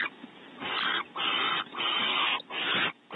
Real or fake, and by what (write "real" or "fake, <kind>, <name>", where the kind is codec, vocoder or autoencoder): real